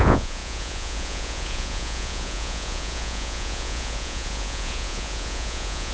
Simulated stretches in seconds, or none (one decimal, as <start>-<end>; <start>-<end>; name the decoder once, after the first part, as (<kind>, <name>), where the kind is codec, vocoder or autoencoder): 0.0-5.9 (vocoder, Vocos)